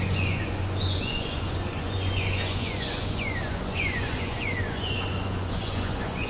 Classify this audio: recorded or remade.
remade